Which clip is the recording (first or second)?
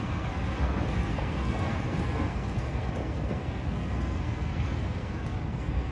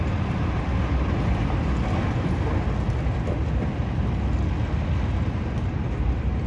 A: second